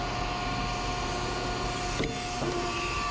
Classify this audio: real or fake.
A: real